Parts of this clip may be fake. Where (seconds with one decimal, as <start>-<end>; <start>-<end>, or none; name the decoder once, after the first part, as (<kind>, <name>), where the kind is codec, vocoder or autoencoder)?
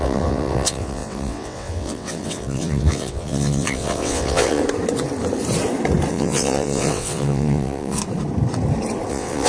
0.0-4.6 (vocoder, WaveNeXt); 6.1-8.0; 9.1-9.5